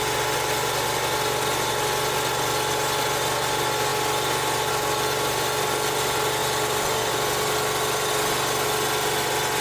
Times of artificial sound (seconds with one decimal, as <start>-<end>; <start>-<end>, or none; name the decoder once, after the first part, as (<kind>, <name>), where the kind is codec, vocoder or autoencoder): none